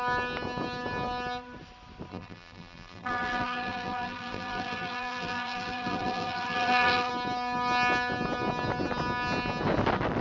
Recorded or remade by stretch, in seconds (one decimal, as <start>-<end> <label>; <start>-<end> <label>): 0.0-2.1 recorded; 2.1-7.1 remade; 7.1-10.2 recorded